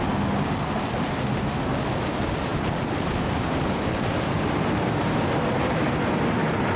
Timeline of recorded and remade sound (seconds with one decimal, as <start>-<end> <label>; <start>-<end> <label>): 0.0-6.8 recorded